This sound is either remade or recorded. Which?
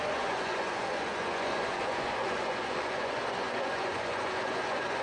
remade